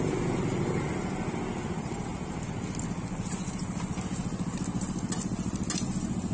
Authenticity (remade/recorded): recorded